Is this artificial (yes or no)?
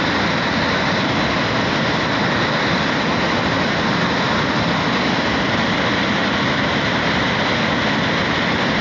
no